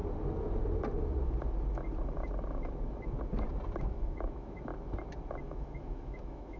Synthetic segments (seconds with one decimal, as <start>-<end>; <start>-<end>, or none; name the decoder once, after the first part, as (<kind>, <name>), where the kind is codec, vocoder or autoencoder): 3.8-4.7 (autoencoder, DAC-VAE); 5.4-6.6